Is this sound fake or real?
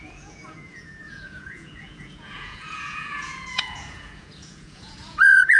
fake